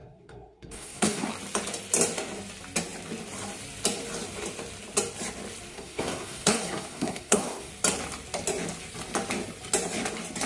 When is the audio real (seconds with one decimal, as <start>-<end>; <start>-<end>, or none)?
1.3-5.7; 7.7-10.5